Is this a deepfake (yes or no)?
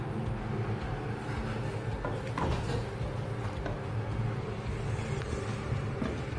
no